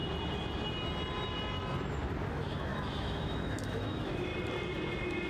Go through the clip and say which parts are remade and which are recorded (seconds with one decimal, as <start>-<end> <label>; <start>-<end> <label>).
0.0-2.3 recorded; 2.3-4.3 remade; 4.3-5.3 recorded